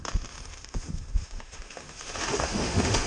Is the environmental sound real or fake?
fake